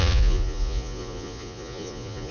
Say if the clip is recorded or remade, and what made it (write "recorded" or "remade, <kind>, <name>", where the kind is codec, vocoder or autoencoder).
remade, vocoder, Vocos